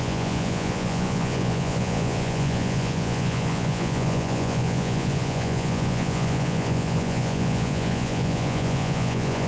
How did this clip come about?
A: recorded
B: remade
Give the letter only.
B